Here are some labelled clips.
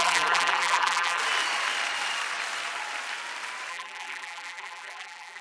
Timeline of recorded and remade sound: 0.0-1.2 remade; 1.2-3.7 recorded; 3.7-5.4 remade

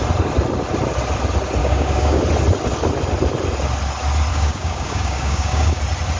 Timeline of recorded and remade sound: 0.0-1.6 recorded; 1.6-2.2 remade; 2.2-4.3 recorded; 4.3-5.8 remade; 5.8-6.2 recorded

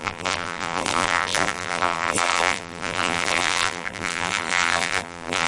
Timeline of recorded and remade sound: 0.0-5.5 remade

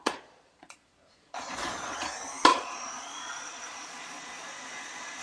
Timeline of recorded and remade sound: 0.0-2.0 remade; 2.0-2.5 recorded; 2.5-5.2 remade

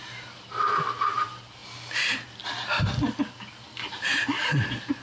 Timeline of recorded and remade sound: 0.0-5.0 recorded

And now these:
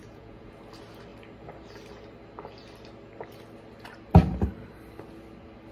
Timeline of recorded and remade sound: 0.0-0.5 remade; 0.5-5.7 recorded

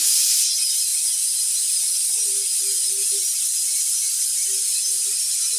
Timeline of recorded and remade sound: 0.0-5.6 recorded